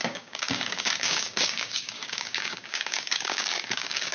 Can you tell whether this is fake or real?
fake